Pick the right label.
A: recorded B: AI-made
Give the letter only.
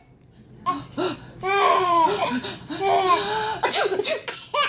A